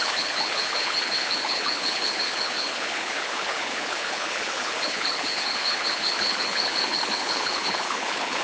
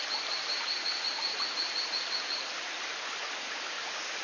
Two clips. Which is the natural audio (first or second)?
second